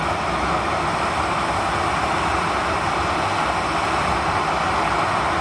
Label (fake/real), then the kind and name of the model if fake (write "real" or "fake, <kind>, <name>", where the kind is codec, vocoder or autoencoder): real